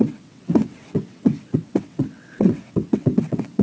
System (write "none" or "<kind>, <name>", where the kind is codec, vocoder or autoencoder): vocoder, WaveNeXt